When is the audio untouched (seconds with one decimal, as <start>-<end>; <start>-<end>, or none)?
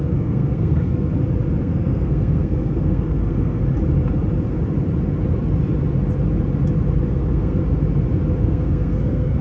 1.1-1.6; 3.6-7.1; 7.6-8.4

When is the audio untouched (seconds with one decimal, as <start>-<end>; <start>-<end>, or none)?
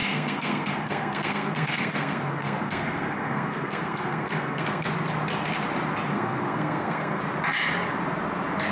4.9-6.1; 7.2-8.7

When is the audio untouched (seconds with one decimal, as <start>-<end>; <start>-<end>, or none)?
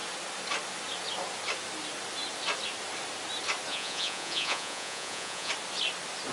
0.0-3.7; 5.5-6.3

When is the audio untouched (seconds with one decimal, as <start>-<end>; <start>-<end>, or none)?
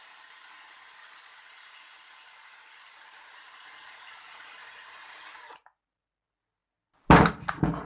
0.0-7.9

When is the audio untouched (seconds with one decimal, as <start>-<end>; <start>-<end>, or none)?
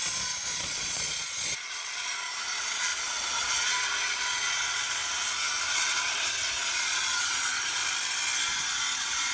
5.0-5.7; 7.8-8.5